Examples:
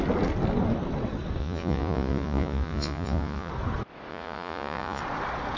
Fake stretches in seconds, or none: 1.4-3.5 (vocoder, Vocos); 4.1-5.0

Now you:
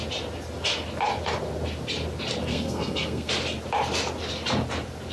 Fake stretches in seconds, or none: 2.5-3.3 (codec, SNAC)

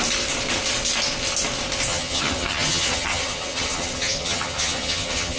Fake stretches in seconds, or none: 1.9-5.4 (vocoder, HiFi-GAN)

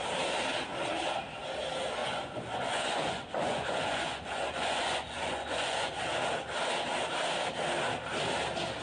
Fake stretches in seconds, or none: 2.0-6.0 (vocoder, Vocos)

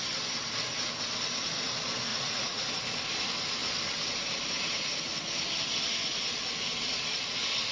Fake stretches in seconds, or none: 2.1-2.7 (vocoder, Vocos)

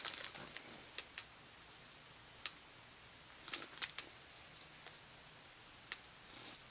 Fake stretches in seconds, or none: none

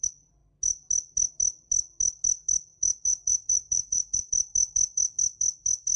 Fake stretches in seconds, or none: 2.7-4.2 (vocoder, BigVGAN v2)